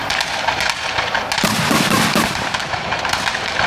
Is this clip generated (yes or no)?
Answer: no